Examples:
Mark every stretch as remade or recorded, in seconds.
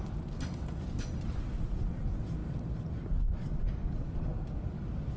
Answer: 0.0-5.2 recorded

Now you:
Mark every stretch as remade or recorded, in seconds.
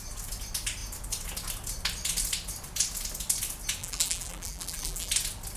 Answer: 0.0-3.8 recorded; 3.8-5.1 remade; 5.1-5.6 recorded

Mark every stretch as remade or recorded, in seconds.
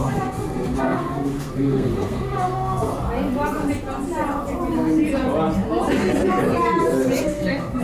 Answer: 0.0-2.9 remade; 2.9-7.2 recorded; 7.2-7.8 remade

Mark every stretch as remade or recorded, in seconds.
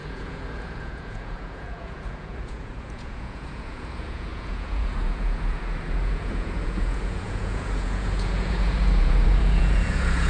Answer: 0.0-10.3 remade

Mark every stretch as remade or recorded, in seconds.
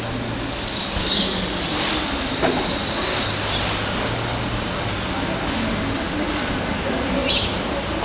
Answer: 0.0-0.8 recorded; 0.8-1.7 remade; 1.7-8.0 recorded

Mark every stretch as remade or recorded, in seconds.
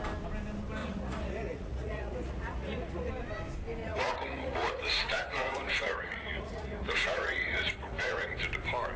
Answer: 0.0-0.8 recorded; 0.8-3.1 remade; 3.1-3.8 recorded; 3.8-8.4 remade; 8.4-9.0 recorded